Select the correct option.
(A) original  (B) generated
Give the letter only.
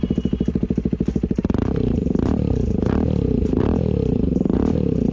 B